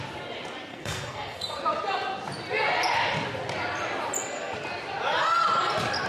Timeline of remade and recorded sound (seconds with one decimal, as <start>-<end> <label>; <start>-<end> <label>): 0.0-0.7 recorded; 0.7-1.6 remade; 1.6-6.1 recorded